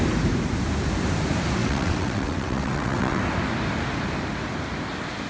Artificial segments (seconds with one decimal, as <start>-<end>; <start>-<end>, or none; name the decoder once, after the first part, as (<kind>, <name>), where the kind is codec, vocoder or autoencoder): 1.6-3.2 (vocoder, WaveNeXt)